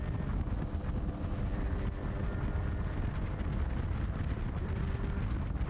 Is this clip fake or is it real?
real